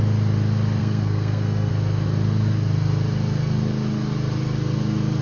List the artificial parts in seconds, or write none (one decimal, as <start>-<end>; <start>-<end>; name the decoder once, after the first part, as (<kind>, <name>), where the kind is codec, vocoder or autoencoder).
0.8-1.7 (codec, SNAC)